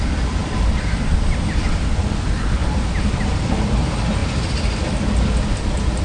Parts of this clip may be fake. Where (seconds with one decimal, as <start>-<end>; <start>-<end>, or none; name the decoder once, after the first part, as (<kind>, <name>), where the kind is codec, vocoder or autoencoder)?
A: none